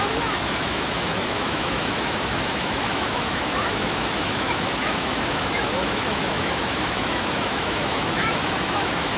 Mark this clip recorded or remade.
remade